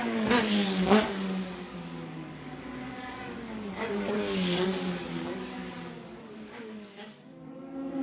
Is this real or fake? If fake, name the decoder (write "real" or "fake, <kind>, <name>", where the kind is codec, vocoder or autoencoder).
fake, codec, DAC